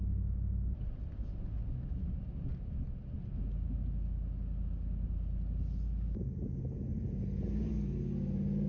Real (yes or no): yes